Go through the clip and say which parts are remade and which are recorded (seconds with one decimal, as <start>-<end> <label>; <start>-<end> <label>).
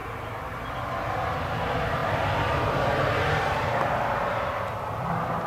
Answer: 0.0-5.5 recorded